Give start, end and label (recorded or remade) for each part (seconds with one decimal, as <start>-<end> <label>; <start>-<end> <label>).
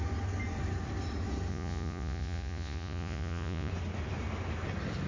0.0-1.5 recorded; 1.5-3.7 remade; 3.7-5.1 recorded